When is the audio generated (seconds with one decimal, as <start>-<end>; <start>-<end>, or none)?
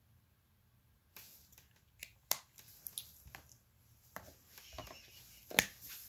none